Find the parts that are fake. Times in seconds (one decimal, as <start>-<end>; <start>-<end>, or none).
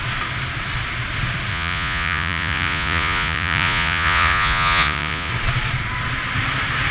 1.5-5.3